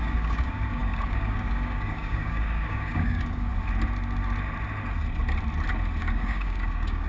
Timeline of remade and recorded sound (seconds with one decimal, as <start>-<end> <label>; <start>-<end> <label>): 0.0-3.5 remade; 3.5-6.0 recorded; 6.0-7.1 remade